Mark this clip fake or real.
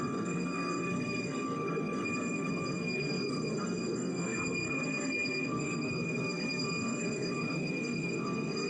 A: fake